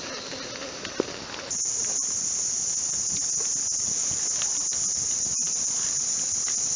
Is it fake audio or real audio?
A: real